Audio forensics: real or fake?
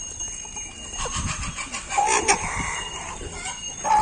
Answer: real